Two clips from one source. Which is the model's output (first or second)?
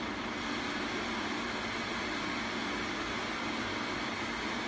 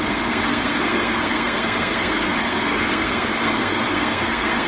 second